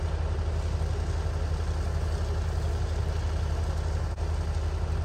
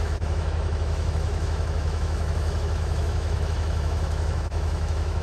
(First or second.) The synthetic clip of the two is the second